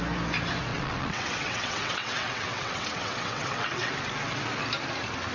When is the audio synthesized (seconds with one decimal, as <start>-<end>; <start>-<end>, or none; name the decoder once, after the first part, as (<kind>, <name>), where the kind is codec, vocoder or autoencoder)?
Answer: 0.7-3.9 (vocoder, WaveNeXt)